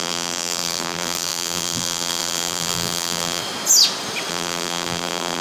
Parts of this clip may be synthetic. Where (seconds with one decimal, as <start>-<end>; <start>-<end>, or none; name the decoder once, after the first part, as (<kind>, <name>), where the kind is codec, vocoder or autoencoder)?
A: 0.0-3.4 (vocoder, BigVGAN v2); 4.3-5.4